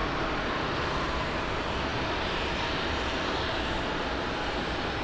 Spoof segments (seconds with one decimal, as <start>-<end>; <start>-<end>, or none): none